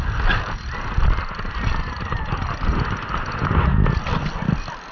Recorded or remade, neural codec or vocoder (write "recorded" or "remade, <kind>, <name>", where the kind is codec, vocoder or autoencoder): remade, vocoder, BigVGAN v2